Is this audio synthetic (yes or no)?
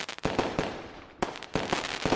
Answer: no